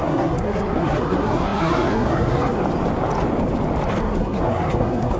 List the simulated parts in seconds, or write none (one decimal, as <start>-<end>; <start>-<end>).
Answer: 0.0-2.6; 4.0-5.2